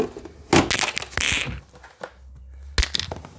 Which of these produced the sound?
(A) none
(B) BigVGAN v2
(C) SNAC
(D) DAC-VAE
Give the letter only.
A